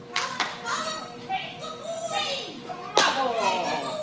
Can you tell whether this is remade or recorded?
recorded